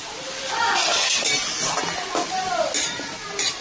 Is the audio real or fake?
real